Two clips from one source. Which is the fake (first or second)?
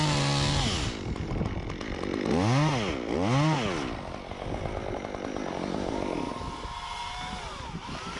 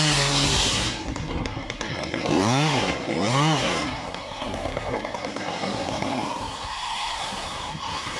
second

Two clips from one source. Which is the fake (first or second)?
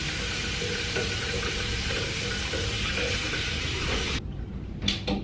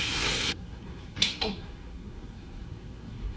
second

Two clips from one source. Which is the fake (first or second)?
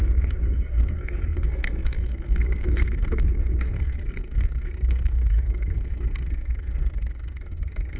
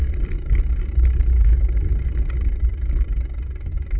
first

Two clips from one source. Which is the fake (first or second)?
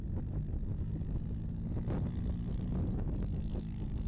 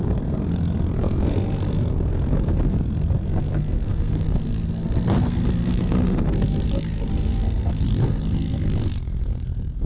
second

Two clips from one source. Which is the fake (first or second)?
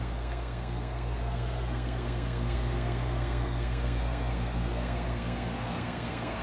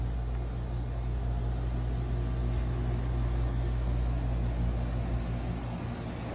first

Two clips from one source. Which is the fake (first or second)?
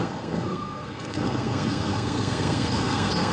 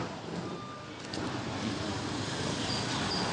first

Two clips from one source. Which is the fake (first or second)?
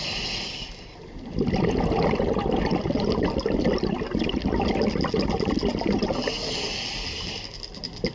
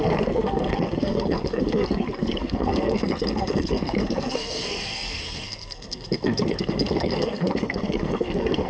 second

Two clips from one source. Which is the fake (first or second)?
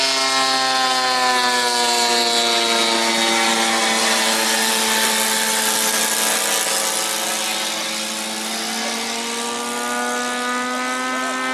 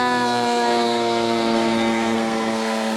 second